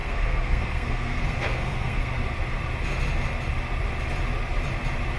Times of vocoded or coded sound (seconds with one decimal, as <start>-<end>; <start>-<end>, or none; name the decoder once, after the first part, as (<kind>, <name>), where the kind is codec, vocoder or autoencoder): 0.0-2.1 (codec, SNAC)